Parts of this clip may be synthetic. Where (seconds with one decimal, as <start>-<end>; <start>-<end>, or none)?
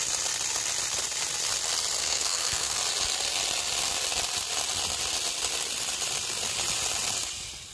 2.0-2.8